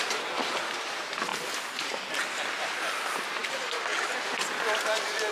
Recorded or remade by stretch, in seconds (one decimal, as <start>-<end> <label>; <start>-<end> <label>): 0.0-5.3 recorded